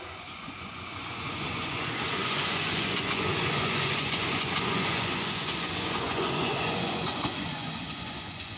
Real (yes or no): no